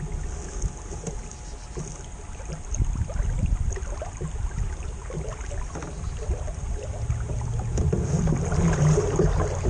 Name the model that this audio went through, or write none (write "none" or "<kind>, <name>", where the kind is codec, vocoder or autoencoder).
none